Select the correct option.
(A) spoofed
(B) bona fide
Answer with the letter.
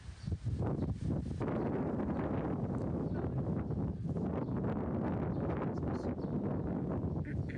B